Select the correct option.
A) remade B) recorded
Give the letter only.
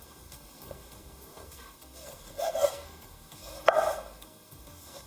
A